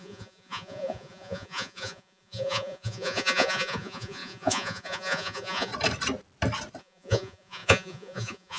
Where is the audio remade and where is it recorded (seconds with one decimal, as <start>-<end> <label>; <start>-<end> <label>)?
0.0-5.7 remade; 5.7-6.8 recorded; 6.8-8.6 remade